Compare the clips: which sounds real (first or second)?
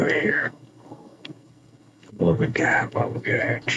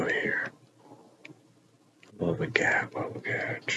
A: second